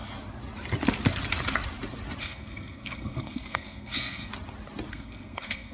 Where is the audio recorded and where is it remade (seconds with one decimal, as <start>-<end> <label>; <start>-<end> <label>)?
0.0-2.2 recorded; 2.2-4.3 remade; 4.3-4.9 recorded; 4.9-5.7 remade